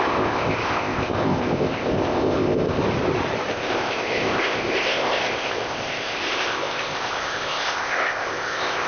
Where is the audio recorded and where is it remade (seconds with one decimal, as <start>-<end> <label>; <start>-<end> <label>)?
0.0-2.8 remade; 2.8-3.5 recorded; 3.5-8.9 remade